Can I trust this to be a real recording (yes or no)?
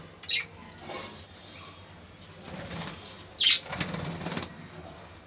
yes